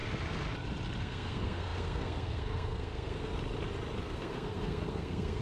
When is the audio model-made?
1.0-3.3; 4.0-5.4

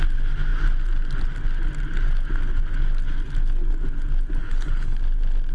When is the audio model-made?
4.4-5.0

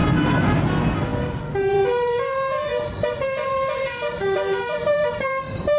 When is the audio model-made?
0.0-5.8

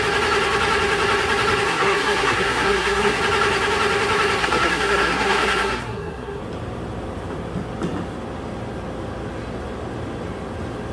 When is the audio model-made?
1.7-3.2; 4.4-6.4